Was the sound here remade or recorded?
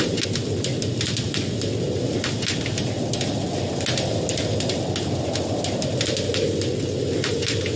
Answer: recorded